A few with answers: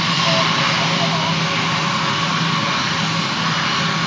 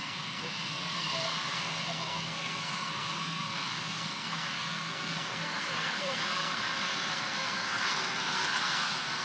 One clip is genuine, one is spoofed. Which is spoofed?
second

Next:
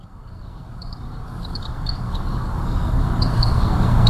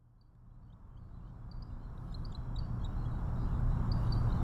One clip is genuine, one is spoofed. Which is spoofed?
first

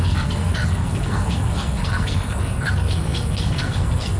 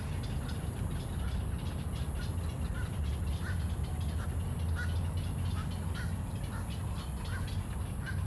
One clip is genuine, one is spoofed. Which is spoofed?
first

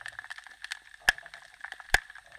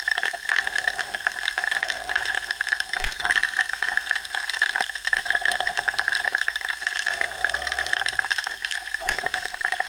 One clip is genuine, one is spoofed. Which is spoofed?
second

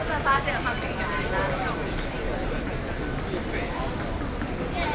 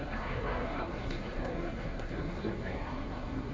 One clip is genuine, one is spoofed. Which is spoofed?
second